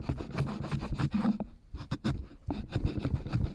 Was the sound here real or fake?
real